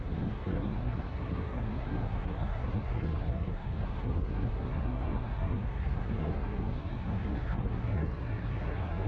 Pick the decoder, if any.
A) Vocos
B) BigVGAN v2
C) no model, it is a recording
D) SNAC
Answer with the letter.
D